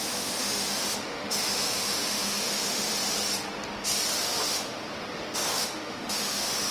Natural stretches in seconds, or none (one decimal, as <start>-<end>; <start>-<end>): 2.9-4.2; 4.8-5.5